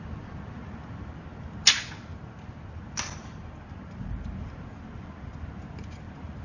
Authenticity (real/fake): real